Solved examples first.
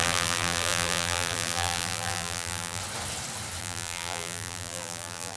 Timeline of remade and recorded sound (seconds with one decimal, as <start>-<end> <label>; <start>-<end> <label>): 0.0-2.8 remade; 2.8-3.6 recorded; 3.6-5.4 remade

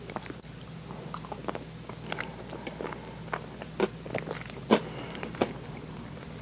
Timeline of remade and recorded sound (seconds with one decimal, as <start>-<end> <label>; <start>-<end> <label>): 0.0-1.4 remade; 1.4-5.2 recorded; 5.2-6.4 remade

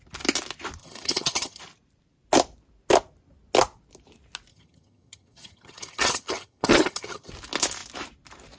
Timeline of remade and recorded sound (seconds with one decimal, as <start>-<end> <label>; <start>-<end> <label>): 0.0-0.8 recorded; 0.8-1.6 remade; 1.6-4.5 recorded; 4.5-7.3 remade; 7.3-8.6 recorded

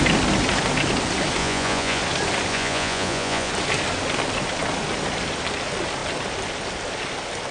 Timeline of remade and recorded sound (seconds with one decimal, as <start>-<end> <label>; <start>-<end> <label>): 0.0-1.4 recorded; 1.4-2.0 remade; 2.0-2.5 recorded; 2.5-3.5 remade; 3.5-7.5 recorded